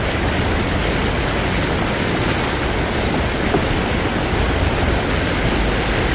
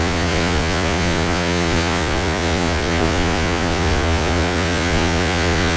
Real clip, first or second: first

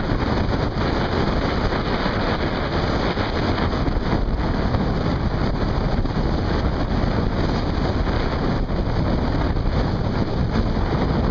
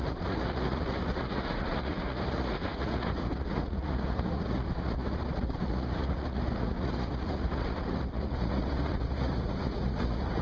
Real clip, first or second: first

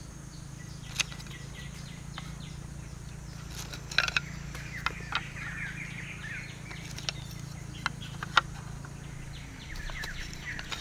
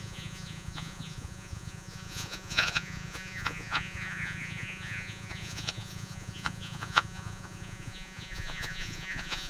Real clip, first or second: first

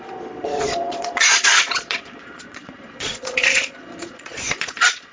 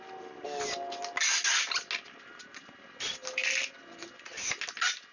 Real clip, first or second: second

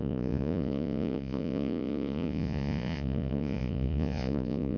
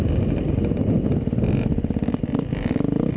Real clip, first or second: second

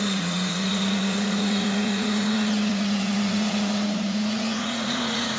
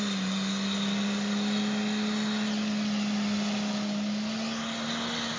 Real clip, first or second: second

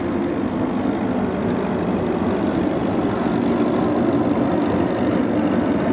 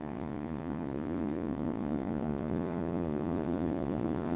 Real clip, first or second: first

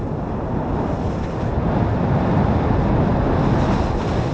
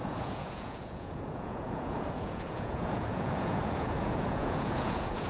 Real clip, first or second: first